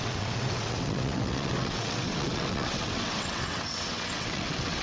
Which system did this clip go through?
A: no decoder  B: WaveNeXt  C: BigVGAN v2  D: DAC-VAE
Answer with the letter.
B